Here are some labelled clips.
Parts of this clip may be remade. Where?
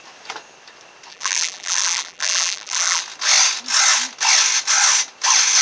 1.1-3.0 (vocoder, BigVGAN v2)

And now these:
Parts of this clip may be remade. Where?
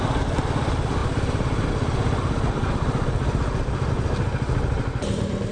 none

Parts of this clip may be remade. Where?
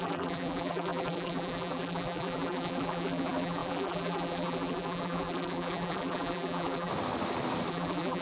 0.0-6.9 (vocoder, BigVGAN v2); 7.7-8.2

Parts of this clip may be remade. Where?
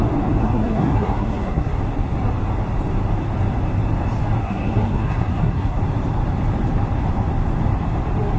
0.4-1.8 (codec, SNAC); 4.4-5.8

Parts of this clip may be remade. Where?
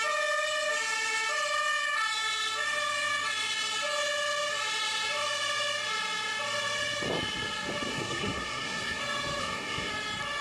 7.9-9.0 (codec, SNAC); 9.4-9.9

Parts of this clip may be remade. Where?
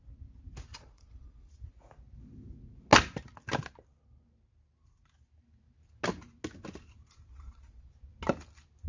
0.7-1.5 (vocoder, Vocos); 7.3-7.9